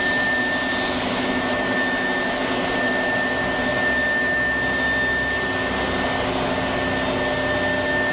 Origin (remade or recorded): recorded